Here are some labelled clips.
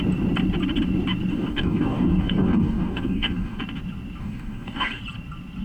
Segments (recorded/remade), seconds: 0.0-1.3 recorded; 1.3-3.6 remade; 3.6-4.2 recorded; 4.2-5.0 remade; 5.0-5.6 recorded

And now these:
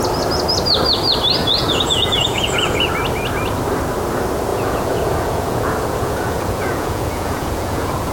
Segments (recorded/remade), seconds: 0.0-1.4 recorded; 1.4-2.9 remade; 2.9-4.5 recorded; 4.5-8.1 remade

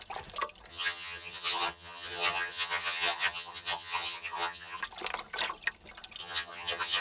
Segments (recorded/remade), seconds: 0.0-0.7 recorded; 0.7-4.8 remade; 4.8-6.2 recorded; 6.2-7.0 remade

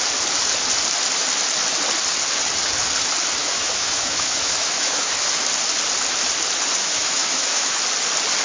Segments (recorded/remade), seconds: 0.0-3.4 recorded; 3.4-5.1 remade; 5.1-6.8 recorded; 6.8-7.7 remade; 7.7-8.4 recorded

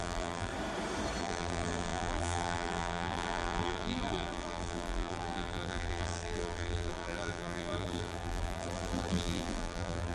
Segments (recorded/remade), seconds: 0.0-0.5 remade; 0.5-1.2 recorded; 1.2-10.1 remade